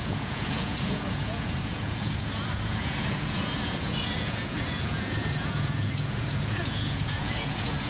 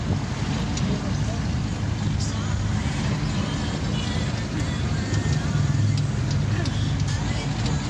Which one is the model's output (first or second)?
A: first